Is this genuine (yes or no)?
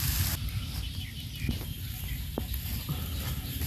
yes